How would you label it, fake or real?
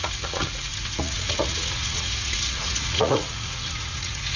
fake